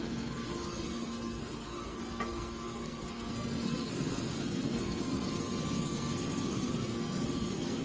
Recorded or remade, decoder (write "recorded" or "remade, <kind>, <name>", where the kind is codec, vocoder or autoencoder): remade, codec, SNAC